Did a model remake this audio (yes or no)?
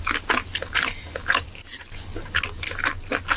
no